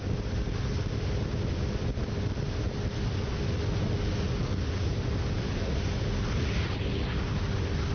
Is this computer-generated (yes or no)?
no